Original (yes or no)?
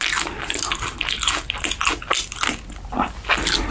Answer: yes